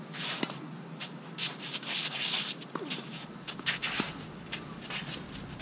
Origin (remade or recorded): recorded